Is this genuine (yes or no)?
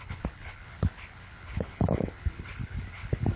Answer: no